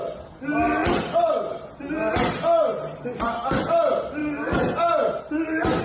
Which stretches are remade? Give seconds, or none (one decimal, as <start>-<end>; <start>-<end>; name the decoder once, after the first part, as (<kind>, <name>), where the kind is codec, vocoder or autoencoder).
none